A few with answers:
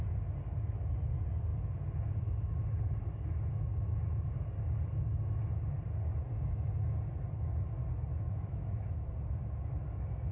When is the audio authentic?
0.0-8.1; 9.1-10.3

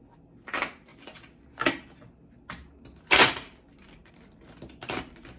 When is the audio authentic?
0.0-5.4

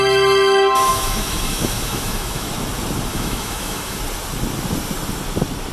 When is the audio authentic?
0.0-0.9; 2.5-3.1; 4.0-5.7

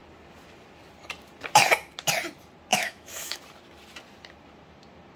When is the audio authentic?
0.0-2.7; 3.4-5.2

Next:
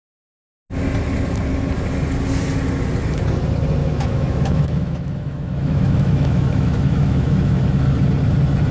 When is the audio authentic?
0.0-3.8; 7.6-8.7